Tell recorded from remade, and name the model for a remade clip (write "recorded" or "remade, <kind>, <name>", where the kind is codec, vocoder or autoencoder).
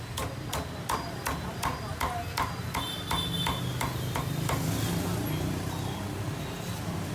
recorded